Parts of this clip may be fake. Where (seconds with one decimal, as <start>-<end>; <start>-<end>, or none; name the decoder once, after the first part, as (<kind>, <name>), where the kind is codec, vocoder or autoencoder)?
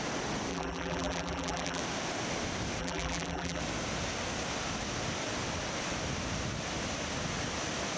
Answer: 0.5-1.8 (vocoder, BigVGAN v2); 2.8-3.6